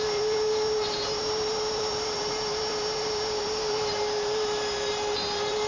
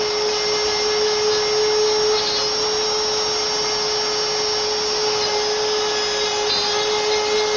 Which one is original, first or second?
second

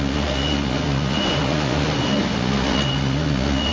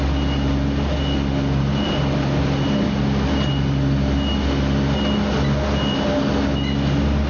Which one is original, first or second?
second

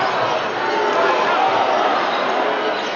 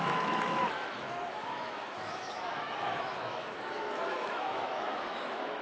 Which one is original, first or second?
first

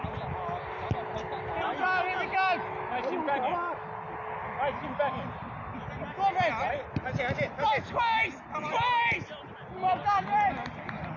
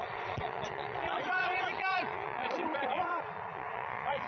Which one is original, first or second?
first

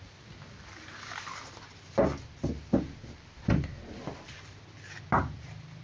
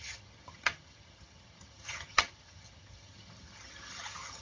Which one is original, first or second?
first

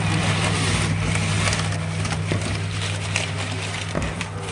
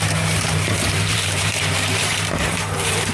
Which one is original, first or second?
first